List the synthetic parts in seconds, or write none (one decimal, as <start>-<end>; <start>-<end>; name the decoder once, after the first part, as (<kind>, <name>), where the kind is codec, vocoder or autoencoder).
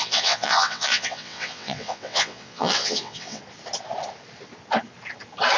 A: 0.0-3.4 (vocoder, WaveNeXt)